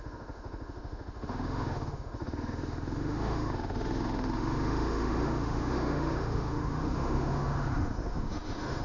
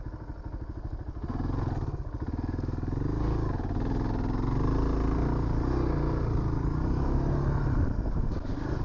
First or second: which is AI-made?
first